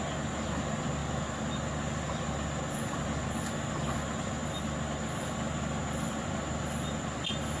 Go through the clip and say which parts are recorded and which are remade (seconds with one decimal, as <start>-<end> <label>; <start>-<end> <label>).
0.0-7.6 recorded